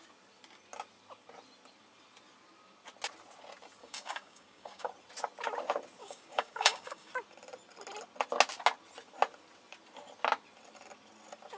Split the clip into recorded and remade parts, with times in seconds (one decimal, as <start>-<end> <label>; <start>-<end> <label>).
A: 0.0-3.8 recorded; 3.8-4.9 remade; 4.9-6.0 recorded; 6.0-7.1 remade; 7.1-11.6 recorded